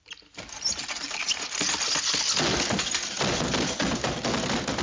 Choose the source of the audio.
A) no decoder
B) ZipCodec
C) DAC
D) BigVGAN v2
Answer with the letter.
A